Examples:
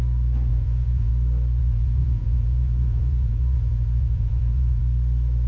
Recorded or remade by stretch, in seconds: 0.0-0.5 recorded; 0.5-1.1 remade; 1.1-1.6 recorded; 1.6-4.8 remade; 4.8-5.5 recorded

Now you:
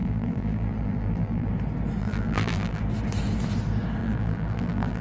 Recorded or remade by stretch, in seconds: 0.0-1.5 remade; 1.5-2.0 recorded; 2.0-2.8 remade; 2.8-4.0 recorded; 4.0-5.0 remade

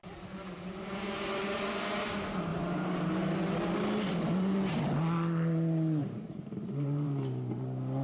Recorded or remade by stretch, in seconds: 0.0-2.5 recorded; 2.5-3.1 remade; 3.1-6.0 recorded; 6.0-7.5 remade; 7.5-8.0 recorded

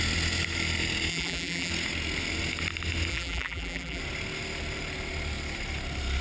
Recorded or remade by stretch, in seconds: 0.0-1.1 recorded; 1.1-1.7 remade; 1.7-3.1 recorded; 3.1-4.0 remade; 4.0-6.2 recorded

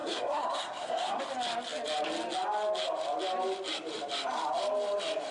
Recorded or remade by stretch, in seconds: 0.0-1.2 remade; 1.2-5.3 recorded